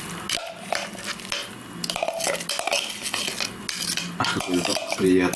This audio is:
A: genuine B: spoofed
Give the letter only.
A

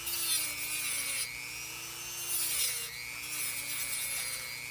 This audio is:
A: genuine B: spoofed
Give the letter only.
A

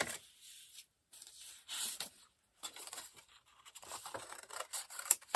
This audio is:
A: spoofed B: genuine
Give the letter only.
A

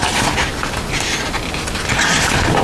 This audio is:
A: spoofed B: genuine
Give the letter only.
B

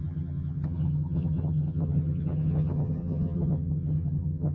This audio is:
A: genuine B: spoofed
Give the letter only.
B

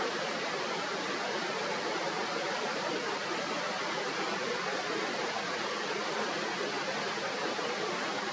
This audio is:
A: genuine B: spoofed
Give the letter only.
A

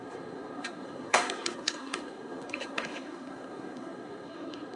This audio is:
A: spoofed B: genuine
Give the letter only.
A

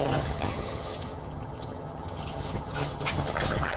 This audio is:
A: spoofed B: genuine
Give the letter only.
A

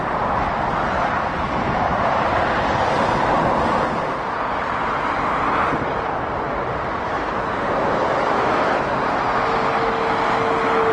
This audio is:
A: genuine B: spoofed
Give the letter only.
A